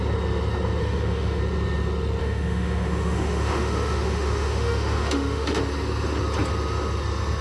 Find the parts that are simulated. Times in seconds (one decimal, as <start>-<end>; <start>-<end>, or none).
0.8-1.4; 2.2-5.6